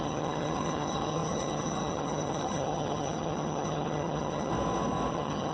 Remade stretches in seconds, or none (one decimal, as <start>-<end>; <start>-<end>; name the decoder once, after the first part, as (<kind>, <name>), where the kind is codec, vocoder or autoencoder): 0.0-4.5 (vocoder, HiFi-GAN); 5.1-5.5